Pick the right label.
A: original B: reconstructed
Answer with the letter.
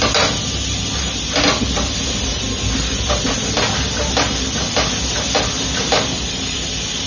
A